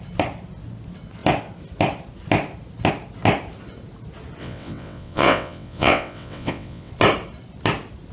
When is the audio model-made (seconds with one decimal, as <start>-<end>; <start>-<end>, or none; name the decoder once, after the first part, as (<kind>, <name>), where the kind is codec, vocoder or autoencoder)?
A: 4.4-6.9 (vocoder, WaveNeXt)